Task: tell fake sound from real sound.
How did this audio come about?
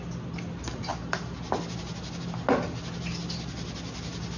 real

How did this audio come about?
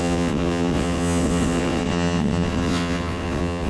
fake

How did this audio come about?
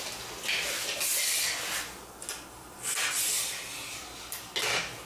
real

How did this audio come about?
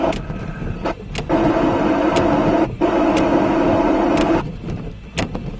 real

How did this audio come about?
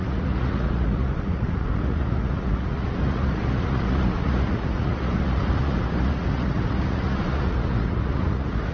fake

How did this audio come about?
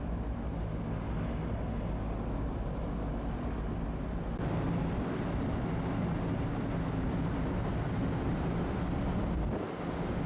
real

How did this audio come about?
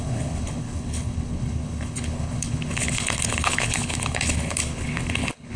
fake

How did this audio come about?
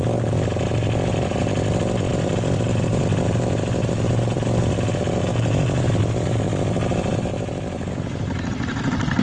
real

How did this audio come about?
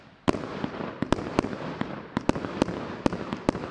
real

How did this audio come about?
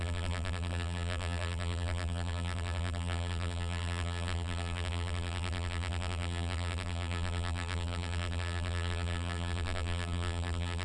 fake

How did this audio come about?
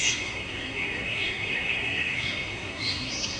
fake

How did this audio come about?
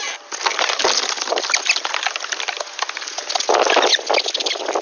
real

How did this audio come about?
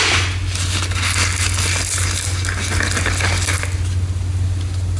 real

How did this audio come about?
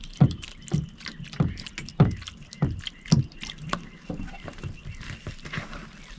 real